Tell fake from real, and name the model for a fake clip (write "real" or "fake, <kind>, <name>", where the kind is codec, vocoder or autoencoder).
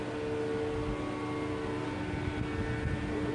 real